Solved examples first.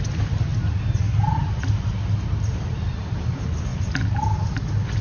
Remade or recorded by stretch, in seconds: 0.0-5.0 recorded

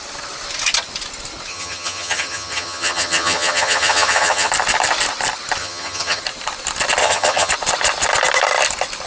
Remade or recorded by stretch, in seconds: 0.0-1.5 recorded; 1.5-4.5 remade; 4.5-5.6 recorded; 5.6-6.2 remade; 6.2-7.0 recorded; 7.0-7.5 remade; 7.5-9.1 recorded

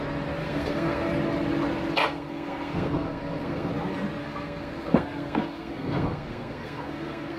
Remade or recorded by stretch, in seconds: 0.0-0.4 recorded; 0.4-1.1 remade; 1.1-2.0 recorded; 2.0-3.7 remade; 3.7-4.2 recorded; 4.2-7.4 remade

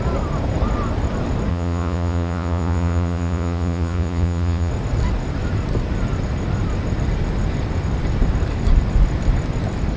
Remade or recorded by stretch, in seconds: 0.0-1.5 recorded; 1.5-4.7 remade; 4.7-10.0 recorded